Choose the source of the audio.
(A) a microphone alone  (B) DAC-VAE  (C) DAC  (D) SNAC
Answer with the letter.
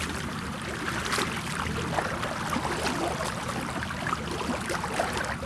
A